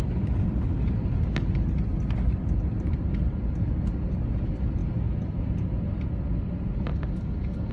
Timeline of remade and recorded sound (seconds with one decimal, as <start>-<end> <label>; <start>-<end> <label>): 0.0-6.9 recorded; 6.9-7.7 remade

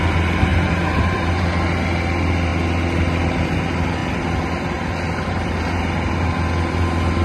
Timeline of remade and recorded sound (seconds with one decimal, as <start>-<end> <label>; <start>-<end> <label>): 0.0-4.0 recorded; 4.0-5.6 remade; 5.6-7.2 recorded